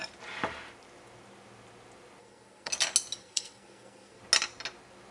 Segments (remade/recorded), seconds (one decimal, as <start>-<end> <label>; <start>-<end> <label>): 0.0-2.2 recorded; 2.2-2.7 remade; 2.7-3.2 recorded; 3.2-4.2 remade; 4.2-5.1 recorded